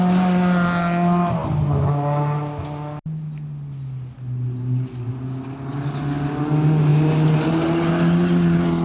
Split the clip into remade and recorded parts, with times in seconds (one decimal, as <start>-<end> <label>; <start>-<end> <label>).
0.0-8.8 recorded